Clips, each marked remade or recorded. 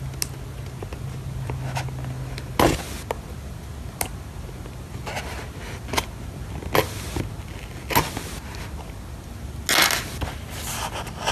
recorded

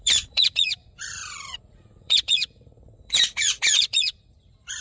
remade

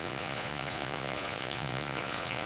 remade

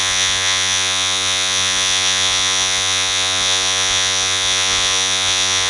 remade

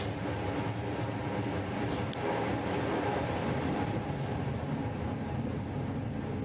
recorded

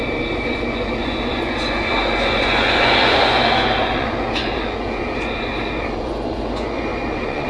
remade